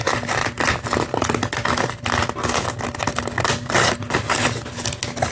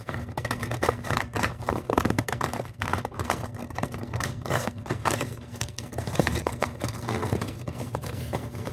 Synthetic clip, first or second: second